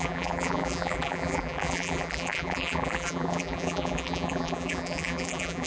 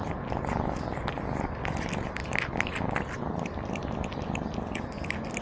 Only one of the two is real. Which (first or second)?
second